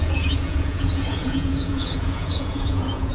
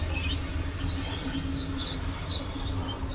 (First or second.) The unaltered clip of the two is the second